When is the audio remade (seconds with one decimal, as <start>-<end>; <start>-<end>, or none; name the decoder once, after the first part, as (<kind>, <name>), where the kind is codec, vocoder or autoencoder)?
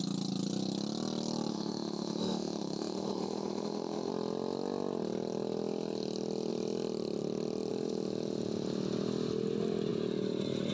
1.5-4.1 (autoencoder, DAC-VAE)